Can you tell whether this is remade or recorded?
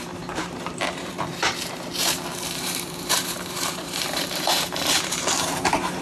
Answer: remade